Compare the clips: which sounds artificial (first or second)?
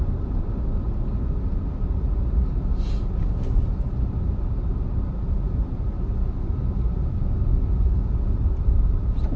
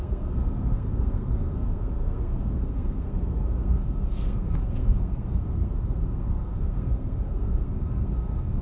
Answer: second